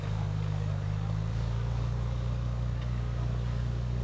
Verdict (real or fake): fake